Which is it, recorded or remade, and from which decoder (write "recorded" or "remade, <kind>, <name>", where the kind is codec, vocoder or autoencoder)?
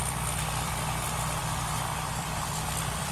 remade, vocoder, BigVGAN v2